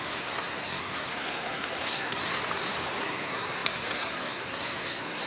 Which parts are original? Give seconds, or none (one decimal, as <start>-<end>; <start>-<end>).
2.4-3.0